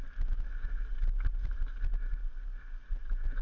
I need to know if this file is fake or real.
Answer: real